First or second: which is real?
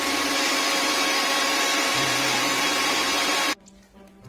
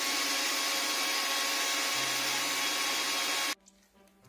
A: second